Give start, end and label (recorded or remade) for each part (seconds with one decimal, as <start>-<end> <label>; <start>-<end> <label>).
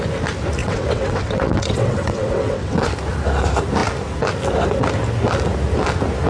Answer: 0.0-0.6 recorded; 0.6-2.9 remade; 2.9-6.3 recorded